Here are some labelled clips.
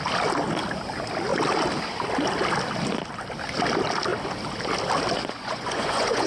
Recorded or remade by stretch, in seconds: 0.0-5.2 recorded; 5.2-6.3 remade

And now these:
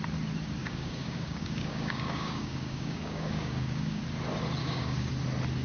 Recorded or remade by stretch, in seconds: 0.0-0.6 recorded; 0.6-4.0 remade; 4.0-4.6 recorded; 4.6-5.1 remade; 5.1-5.6 recorded

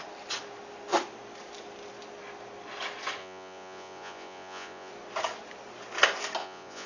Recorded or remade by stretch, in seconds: 0.0-3.2 recorded; 3.2-4.9 remade; 4.9-6.4 recorded; 6.4-6.9 remade

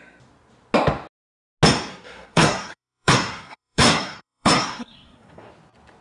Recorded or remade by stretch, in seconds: 0.0-1.9 recorded; 1.9-5.5 remade; 5.5-6.0 recorded

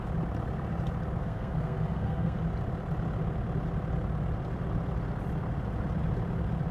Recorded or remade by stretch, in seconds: 0.0-1.2 recorded; 1.2-2.4 remade; 2.4-6.7 recorded